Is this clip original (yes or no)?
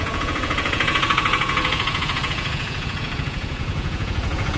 no